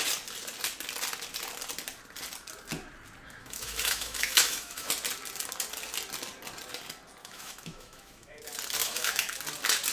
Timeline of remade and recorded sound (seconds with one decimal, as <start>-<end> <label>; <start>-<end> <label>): 0.0-3.4 recorded; 3.4-4.9 remade; 4.9-7.2 recorded; 7.2-8.4 remade; 8.4-8.8 recorded; 8.8-9.4 remade; 9.4-9.9 recorded

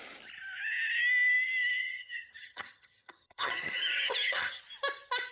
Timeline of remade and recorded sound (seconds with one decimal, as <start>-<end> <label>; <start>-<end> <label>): 0.0-1.8 recorded; 1.8-4.6 remade; 4.6-5.3 recorded

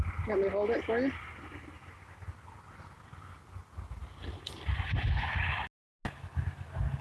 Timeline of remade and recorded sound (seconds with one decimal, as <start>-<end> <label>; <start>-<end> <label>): 0.0-7.0 recorded

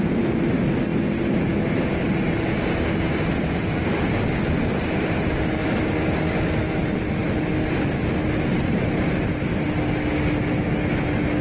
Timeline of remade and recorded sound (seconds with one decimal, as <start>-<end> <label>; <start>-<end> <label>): 0.0-11.4 recorded

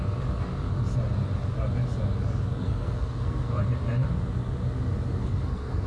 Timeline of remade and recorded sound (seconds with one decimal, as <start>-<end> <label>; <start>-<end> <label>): 0.0-2.6 recorded; 2.6-3.6 remade; 3.6-5.2 recorded; 5.2-5.9 remade

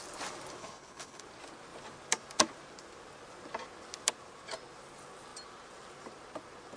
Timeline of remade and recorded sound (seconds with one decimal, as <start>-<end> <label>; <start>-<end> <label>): 0.0-0.6 recorded; 0.6-1.2 remade; 1.2-6.8 recorded